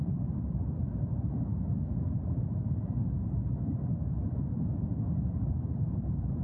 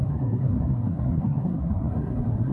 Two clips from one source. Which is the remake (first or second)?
second